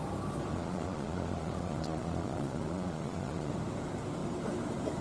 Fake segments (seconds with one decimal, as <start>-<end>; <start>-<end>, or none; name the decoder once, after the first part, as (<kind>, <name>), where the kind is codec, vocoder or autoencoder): 0.5-3.5 (vocoder, Vocos)